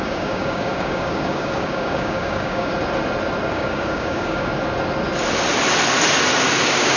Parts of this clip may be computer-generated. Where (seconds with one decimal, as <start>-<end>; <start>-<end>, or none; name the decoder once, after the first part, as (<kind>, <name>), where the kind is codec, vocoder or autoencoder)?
0.0-2.7 (codec, DAC); 3.5-4.5; 6.6-7.0